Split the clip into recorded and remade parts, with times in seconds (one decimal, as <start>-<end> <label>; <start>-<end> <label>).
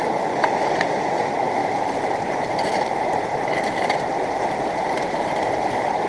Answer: 0.0-1.6 recorded; 1.6-5.3 remade; 5.3-6.1 recorded